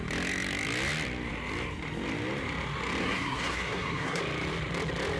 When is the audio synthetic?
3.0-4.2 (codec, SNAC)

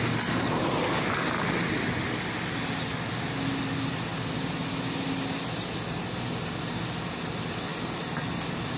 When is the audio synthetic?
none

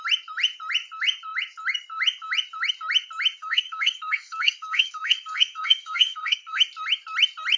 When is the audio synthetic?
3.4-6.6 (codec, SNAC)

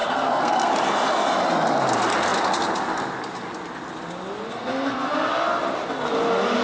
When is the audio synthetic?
0.0-0.7 (codec, SNAC); 4.5-5.3